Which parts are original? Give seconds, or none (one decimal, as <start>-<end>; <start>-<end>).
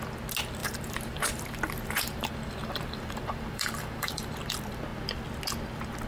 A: 0.0-0.6; 4.3-6.1